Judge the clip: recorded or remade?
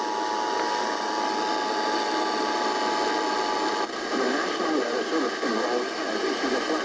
recorded